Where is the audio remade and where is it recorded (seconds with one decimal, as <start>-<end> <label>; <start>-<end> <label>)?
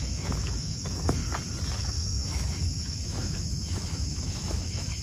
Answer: 0.0-1.2 remade; 1.2-1.8 recorded; 1.8-5.0 remade